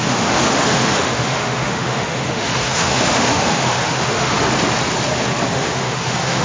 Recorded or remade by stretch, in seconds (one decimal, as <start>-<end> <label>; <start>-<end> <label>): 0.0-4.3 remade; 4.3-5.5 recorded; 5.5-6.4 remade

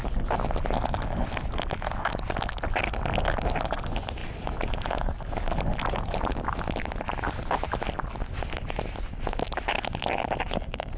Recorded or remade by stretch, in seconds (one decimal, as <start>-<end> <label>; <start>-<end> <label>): 0.0-11.0 recorded

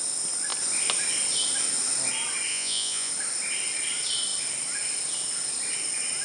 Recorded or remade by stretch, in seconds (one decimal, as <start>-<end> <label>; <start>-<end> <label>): 0.0-2.5 recorded; 2.5-3.1 remade; 3.1-6.2 recorded

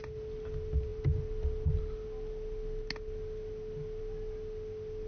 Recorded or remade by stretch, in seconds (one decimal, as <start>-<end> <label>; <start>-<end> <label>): 0.0-5.1 recorded

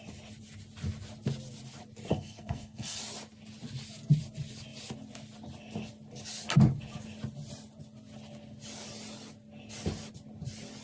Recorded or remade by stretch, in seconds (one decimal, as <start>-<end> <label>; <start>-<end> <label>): 0.0-2.1 recorded; 2.1-3.0 remade; 3.0-10.8 recorded

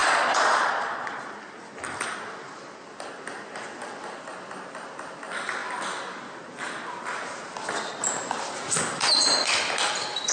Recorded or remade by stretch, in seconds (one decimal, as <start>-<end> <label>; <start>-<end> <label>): 0.0-1.2 remade; 1.2-10.3 recorded

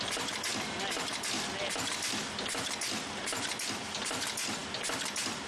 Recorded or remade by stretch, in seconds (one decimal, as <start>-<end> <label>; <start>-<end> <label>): 0.0-5.5 recorded

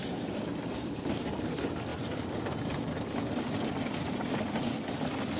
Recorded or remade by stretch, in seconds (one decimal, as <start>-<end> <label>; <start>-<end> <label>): 0.0-5.4 recorded